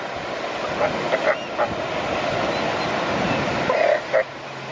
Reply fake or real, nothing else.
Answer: real